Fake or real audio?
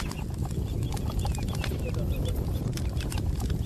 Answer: real